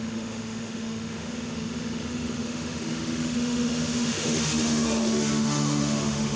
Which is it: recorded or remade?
remade